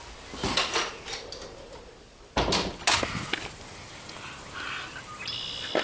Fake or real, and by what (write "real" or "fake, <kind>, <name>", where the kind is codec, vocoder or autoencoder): real